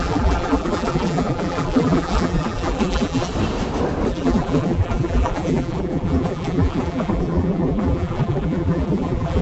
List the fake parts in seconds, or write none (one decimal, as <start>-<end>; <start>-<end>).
0.0-3.3; 4.1-9.4